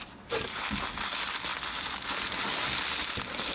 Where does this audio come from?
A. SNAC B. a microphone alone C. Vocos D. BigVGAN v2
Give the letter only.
B